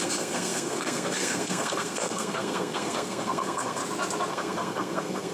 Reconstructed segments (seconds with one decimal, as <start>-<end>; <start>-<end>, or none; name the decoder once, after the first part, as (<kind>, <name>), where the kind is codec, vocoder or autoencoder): 0.0-3.8 (codec, SNAC); 4.3-5.3